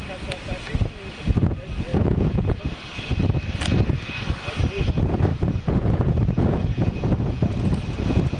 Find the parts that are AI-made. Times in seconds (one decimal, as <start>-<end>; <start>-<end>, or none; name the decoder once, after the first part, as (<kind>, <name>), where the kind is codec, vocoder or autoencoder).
1.9-2.6 (vocoder, Vocos); 5.3-7.5